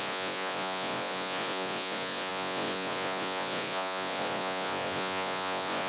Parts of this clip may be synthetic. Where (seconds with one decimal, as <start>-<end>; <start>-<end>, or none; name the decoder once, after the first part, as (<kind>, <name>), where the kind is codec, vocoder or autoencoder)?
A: 0.0-5.9 (vocoder, Vocos)